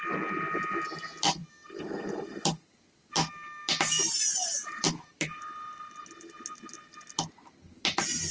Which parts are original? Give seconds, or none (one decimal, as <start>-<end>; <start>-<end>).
0.0-4.8; 5.4-8.3